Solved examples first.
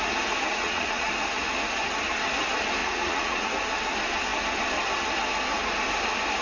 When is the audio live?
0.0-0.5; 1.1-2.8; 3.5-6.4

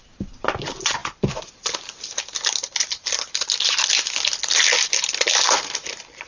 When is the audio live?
0.0-6.3

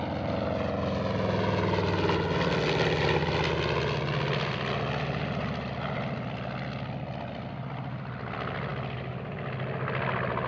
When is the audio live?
0.0-10.5